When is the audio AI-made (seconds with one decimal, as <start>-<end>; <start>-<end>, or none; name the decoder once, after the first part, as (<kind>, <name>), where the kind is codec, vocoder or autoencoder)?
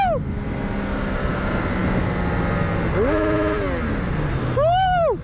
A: none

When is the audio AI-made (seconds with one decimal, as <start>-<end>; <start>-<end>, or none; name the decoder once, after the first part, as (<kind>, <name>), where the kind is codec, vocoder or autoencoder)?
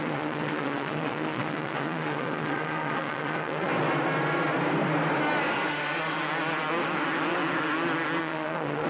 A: 0.0-3.7 (vocoder, Vocos); 8.2-8.9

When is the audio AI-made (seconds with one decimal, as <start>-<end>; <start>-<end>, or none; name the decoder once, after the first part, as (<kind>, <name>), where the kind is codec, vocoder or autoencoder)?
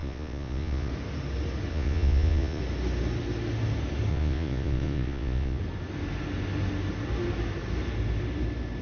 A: 0.0-0.9 (vocoder, Vocos); 1.7-2.6; 4.1-5.6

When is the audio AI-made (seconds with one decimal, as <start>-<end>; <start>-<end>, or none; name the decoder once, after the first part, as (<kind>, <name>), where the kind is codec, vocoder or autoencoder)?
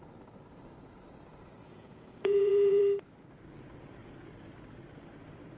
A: 1.3-2.8 (vocoder, Vocos)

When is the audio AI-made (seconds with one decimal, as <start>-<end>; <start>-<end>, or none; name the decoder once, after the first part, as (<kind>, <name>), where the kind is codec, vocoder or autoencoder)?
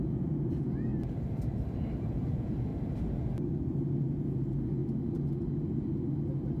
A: 0.0-0.9 (vocoder, Vocos); 2.0-2.7; 4.1-4.8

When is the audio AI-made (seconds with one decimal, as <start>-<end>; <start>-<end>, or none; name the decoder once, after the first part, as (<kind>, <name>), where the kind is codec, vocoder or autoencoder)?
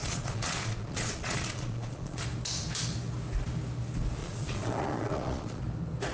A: 0.0-2.2 (vocoder, Vocos); 4.2-5.6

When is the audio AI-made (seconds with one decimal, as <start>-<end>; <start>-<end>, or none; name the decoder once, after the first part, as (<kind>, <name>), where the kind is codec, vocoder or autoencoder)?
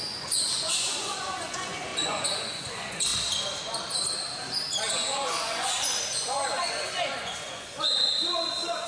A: 0.0-3.1 (vocoder, Vocos); 4.9-8.9